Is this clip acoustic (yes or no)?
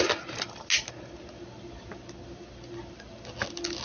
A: yes